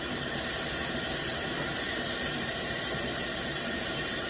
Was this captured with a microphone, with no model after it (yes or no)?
no